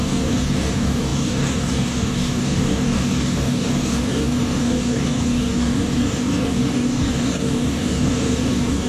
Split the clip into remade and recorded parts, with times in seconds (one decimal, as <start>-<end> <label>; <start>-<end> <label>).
0.0-8.9 remade